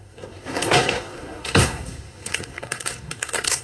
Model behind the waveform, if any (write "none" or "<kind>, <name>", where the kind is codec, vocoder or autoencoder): codec, SNAC